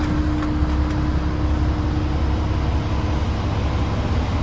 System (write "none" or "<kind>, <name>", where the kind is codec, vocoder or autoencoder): none